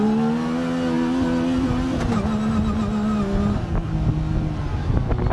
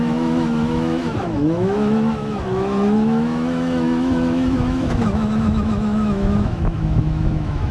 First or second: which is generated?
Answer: second